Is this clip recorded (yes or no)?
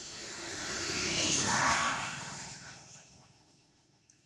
no